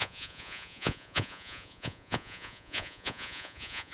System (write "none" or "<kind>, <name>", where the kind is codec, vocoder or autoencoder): vocoder, Vocos